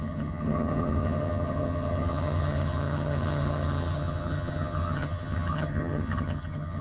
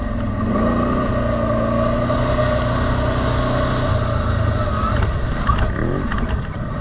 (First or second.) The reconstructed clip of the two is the first